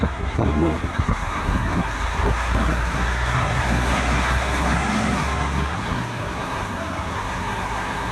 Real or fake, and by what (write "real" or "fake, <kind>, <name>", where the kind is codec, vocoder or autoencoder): fake, codec, SNAC